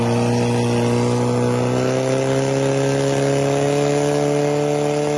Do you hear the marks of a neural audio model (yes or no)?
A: no